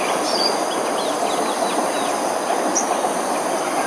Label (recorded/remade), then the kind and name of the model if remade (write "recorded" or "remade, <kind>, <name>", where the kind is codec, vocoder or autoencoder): recorded